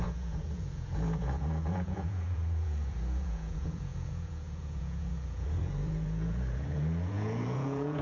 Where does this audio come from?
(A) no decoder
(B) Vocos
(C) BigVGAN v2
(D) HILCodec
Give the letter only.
B